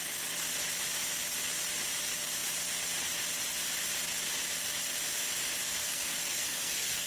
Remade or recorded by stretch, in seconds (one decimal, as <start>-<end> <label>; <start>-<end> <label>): 0.0-5.7 recorded; 5.7-7.1 remade

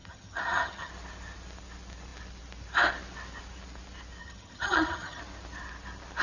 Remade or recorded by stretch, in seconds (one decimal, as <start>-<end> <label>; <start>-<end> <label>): 0.0-0.9 remade; 0.9-4.2 recorded; 4.2-5.2 remade; 5.2-6.2 recorded

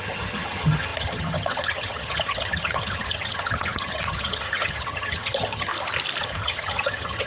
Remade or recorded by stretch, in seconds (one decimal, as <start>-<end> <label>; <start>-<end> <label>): 0.0-5.7 remade; 5.7-6.2 recorded; 6.2-7.3 remade